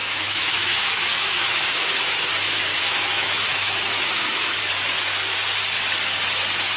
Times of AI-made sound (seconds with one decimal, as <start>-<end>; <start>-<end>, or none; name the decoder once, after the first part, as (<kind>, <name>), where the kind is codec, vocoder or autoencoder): 0.0-2.3 (autoencoder, DAC-VAE); 2.7-4.6